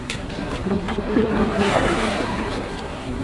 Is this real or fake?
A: fake